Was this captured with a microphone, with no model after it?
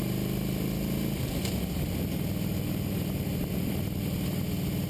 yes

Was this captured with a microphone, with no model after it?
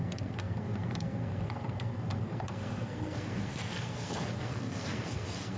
no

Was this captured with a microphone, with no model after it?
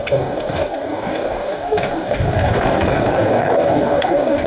no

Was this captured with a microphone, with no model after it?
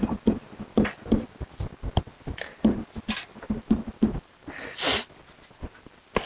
yes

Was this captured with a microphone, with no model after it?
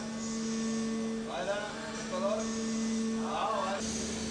yes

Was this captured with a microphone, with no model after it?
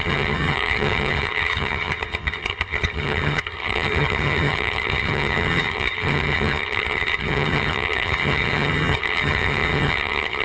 no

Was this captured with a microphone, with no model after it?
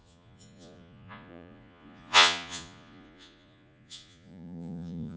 no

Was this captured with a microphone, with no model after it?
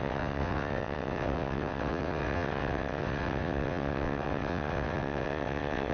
no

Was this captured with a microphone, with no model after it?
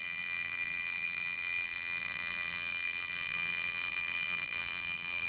no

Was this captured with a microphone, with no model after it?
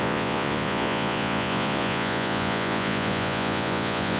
no